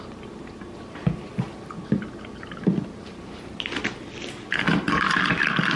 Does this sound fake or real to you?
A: real